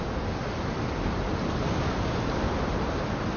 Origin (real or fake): real